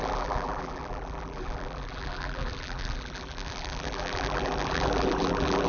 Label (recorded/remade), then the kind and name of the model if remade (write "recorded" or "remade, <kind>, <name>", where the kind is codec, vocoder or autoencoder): remade, vocoder, BigVGAN v2